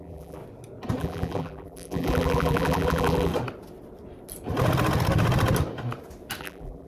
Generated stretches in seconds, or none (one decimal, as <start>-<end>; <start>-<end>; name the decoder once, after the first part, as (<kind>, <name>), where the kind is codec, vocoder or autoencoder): 0.0-0.4 (vocoder, BigVGAN v2); 1.0-3.3; 6.4-6.9